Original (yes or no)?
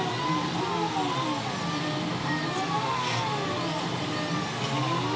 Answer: yes